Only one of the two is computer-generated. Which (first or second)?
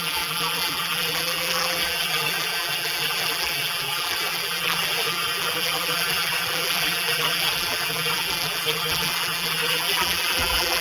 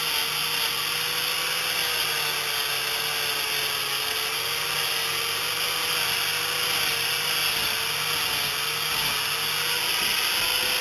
first